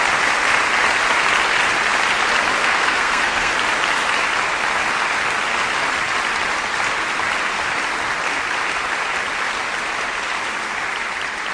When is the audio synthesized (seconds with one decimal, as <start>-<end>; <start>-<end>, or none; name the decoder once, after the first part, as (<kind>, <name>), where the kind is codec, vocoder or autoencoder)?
2.6-3.5 (codec, SNAC)